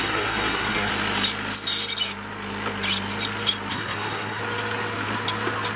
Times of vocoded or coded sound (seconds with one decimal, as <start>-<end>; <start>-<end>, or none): 0.0-0.9; 3.7-4.4